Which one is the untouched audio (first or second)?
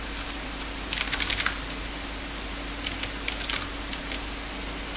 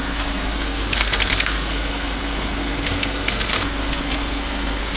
first